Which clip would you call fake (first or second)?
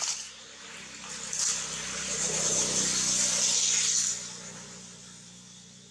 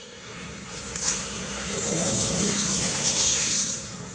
second